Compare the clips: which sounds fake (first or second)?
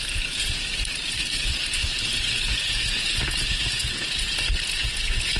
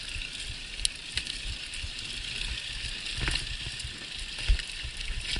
first